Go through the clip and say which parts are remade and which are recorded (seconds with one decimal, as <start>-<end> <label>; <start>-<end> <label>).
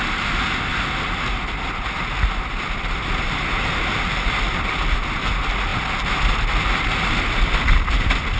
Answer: 0.0-8.4 recorded